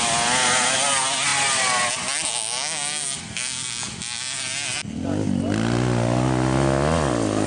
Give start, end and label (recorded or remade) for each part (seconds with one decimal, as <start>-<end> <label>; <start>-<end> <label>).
0.0-7.5 recorded